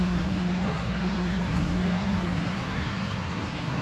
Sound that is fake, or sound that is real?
fake